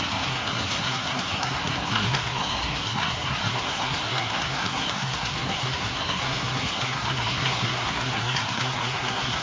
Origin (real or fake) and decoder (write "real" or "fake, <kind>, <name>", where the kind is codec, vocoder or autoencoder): fake, codec, SNAC